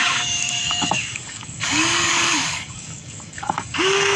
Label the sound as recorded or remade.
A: remade